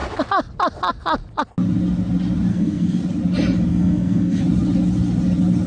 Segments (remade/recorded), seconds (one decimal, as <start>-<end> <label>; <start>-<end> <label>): 0.0-2.5 recorded; 2.5-3.0 remade; 3.0-3.7 recorded; 3.7-4.4 remade; 4.4-5.7 recorded